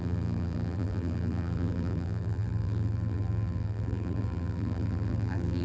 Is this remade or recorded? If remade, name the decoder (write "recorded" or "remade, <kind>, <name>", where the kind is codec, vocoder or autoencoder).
remade, vocoder, BigVGAN v2